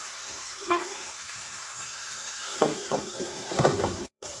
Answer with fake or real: fake